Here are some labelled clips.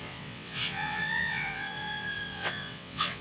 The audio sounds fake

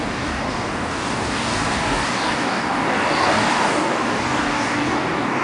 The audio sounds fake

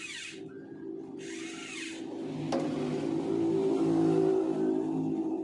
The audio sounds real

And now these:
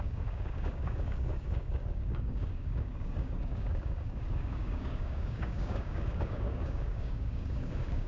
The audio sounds fake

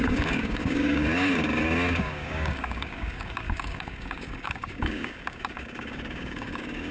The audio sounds fake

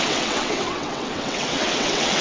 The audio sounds fake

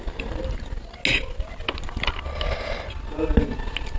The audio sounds real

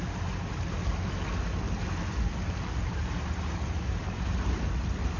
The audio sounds real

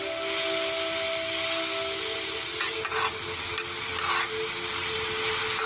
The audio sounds real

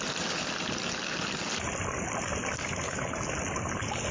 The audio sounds real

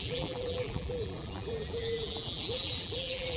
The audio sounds fake